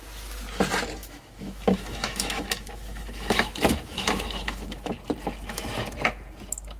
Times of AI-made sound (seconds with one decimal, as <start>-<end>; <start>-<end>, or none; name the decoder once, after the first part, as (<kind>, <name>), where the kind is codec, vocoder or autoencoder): 1.0-4.9 (autoencoder, DAC-VAE)

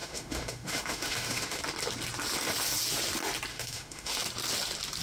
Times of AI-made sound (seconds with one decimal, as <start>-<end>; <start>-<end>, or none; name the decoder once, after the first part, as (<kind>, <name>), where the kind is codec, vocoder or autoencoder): 0.0-1.6 (autoencoder, DAC-VAE); 3.5-4.2

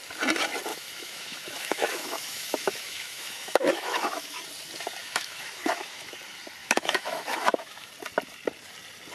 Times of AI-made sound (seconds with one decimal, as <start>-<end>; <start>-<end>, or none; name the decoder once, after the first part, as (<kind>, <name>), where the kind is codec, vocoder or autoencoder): 0.7-4.4 (autoencoder, DAC-VAE); 5.0-6.1; 6.6-7.9